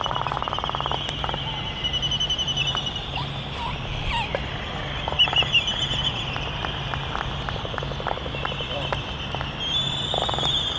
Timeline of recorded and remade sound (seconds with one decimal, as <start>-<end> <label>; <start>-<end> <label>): 0.0-10.8 recorded